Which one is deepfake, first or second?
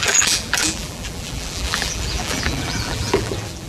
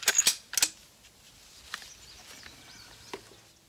first